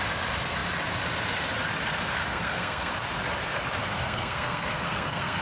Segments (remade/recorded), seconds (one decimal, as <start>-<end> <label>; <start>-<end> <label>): 0.0-2.3 recorded; 2.3-2.9 remade; 2.9-3.8 recorded; 3.8-5.4 remade